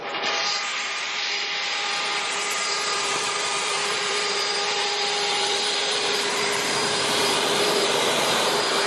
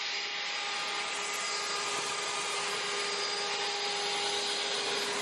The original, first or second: second